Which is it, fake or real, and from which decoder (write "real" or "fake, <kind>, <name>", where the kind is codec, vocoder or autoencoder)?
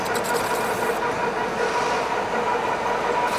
real